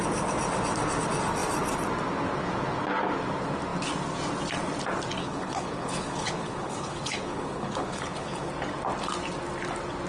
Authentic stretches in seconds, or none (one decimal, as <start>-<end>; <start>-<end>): 0.0-5.2; 8.5-10.1